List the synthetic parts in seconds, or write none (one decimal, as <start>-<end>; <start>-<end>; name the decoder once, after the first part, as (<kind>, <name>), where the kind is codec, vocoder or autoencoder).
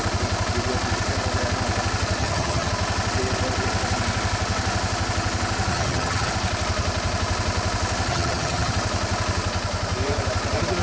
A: 2.2-2.7 (vocoder, HiFi-GAN); 5.7-6.3; 8.1-8.7